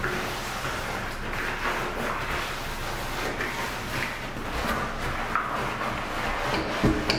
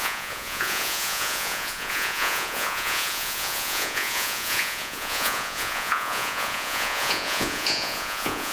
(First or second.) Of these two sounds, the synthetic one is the second